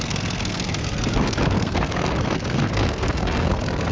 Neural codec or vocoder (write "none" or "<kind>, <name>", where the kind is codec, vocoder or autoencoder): codec, SNAC